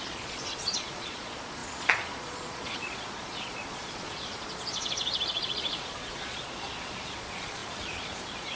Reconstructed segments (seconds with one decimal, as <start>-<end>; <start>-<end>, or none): 0.0-8.6